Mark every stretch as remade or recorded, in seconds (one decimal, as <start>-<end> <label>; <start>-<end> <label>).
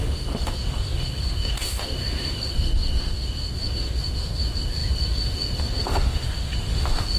0.0-7.2 remade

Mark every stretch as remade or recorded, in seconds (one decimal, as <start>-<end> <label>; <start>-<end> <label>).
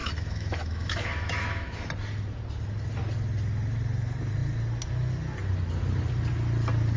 0.0-1.9 remade; 1.9-7.0 recorded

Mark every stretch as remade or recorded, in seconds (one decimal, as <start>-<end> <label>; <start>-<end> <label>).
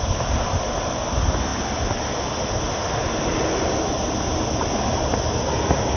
0.0-6.0 recorded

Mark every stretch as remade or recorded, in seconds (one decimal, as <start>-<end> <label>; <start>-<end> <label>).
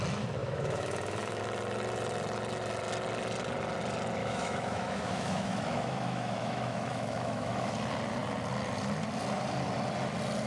0.0-0.4 recorded; 0.4-1.4 remade; 1.4-4.2 recorded; 4.2-7.7 remade; 7.7-10.5 recorded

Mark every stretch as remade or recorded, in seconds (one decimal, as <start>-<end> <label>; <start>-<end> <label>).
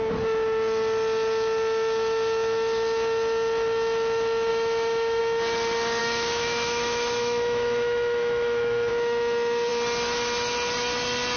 0.0-4.5 recorded; 4.5-5.2 remade; 5.2-6.0 recorded; 6.0-8.9 remade; 8.9-11.4 recorded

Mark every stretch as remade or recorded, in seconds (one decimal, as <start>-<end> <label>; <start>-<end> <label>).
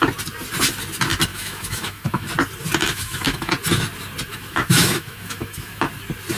0.0-1.3 recorded; 1.3-2.3 remade; 2.3-2.8 recorded; 2.8-3.5 remade; 3.5-4.3 recorded; 4.3-5.9 remade; 5.9-6.4 recorded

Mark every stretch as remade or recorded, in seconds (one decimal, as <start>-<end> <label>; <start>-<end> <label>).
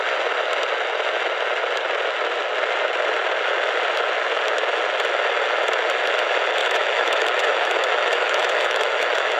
0.0-6.6 recorded; 6.6-9.4 remade